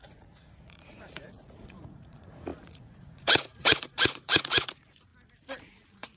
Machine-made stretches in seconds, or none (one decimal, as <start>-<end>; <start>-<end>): 0.0-5.1; 5.6-6.2